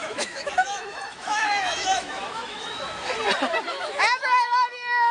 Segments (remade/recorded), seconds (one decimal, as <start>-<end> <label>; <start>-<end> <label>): 0.0-3.1 remade; 3.1-3.7 recorded; 3.7-5.1 remade